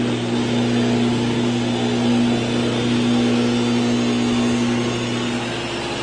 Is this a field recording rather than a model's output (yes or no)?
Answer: yes